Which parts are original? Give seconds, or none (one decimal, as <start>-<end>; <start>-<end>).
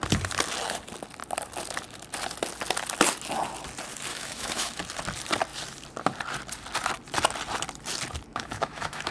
0.0-4.1; 4.8-8.3